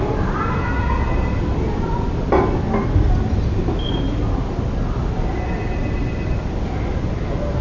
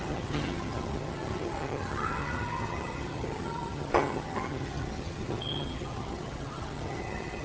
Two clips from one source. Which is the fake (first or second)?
second